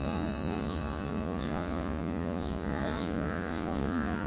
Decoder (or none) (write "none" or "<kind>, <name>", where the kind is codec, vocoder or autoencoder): vocoder, Vocos